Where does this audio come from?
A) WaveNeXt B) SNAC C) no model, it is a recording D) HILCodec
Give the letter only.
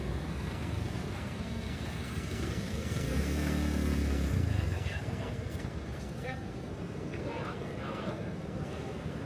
B